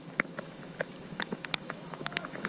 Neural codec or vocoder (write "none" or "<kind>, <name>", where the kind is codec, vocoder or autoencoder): autoencoder, DAC-VAE